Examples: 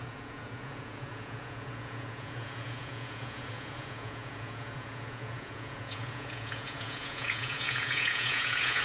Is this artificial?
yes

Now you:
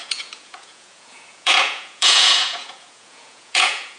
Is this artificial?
yes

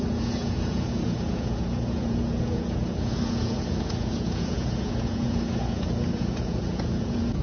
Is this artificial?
yes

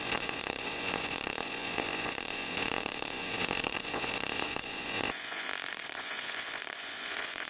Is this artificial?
yes